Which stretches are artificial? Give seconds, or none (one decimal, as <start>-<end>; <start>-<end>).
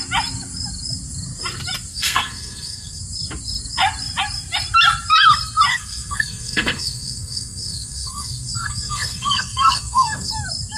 1.9-3.0; 5.7-10.3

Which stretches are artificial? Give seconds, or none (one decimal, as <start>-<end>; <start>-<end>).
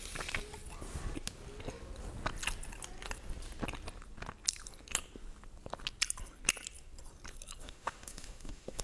7.6-8.8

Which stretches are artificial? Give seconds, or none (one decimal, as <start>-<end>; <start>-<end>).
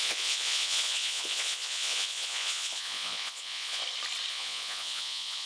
0.0-3.8; 4.3-5.5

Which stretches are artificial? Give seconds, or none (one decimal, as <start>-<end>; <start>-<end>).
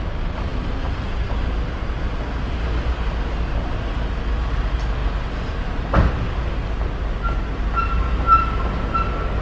none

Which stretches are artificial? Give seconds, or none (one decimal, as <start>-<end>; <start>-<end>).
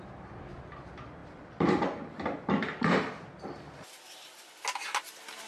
1.2-4.5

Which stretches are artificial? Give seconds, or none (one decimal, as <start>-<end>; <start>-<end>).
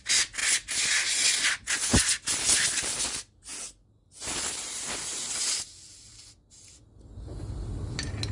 none